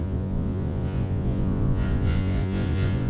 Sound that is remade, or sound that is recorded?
remade